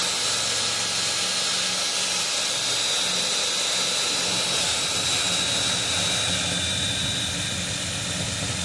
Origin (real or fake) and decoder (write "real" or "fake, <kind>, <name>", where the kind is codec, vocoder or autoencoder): real